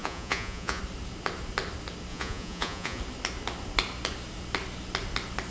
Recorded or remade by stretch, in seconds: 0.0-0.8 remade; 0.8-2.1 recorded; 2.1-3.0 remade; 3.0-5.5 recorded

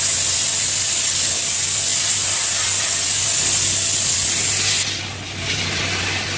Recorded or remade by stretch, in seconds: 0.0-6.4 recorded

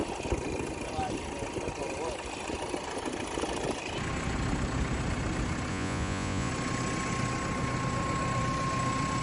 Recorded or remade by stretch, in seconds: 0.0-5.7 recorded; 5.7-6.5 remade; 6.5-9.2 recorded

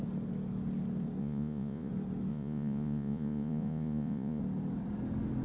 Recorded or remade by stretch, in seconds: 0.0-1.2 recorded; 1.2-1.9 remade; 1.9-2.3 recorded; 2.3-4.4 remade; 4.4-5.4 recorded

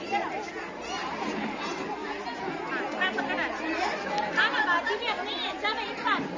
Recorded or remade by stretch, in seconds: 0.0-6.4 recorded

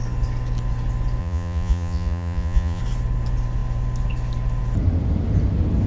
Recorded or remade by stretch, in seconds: 0.0-1.2 recorded; 1.2-2.8 remade; 2.8-5.9 recorded

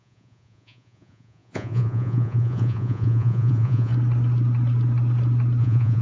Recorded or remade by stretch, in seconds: 0.0-3.9 remade; 3.9-5.6 recorded; 5.6-6.0 remade